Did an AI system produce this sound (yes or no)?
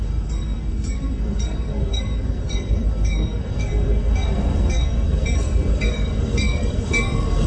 yes